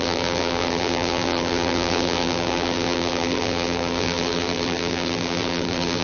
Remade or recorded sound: remade